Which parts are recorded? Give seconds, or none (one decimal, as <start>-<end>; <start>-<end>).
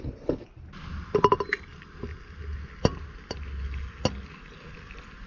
0.0-5.3